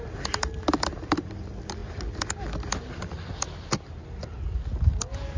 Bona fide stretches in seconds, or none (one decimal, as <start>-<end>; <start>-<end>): 0.0-5.4